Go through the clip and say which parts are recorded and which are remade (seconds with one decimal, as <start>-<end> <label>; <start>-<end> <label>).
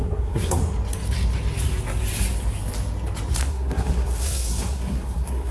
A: 0.0-0.6 remade; 0.6-3.5 recorded; 3.5-5.5 remade